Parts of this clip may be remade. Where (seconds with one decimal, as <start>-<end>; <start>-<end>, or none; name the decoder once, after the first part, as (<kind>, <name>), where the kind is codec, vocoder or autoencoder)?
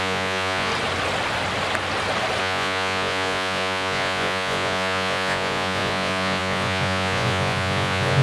0.0-0.7 (vocoder, Vocos); 2.4-8.2